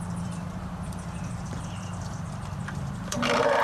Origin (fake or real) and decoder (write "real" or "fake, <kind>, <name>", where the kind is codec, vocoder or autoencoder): fake, vocoder, BigVGAN v2